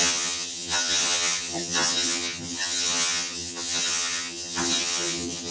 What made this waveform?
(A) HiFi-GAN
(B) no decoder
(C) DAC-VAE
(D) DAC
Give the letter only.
A